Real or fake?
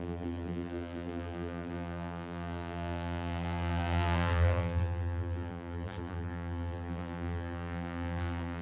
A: fake